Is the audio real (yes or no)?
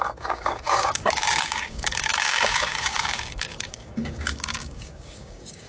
no